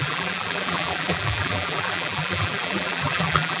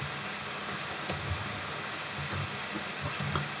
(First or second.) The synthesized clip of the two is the first